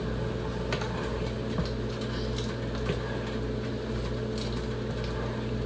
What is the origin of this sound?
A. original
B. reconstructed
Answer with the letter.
A